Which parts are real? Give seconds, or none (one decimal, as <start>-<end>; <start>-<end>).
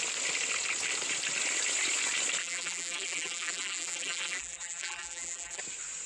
0.0-2.4; 5.6-6.1